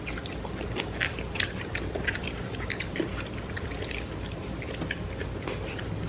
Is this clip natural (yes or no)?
yes